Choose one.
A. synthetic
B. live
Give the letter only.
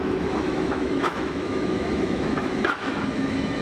A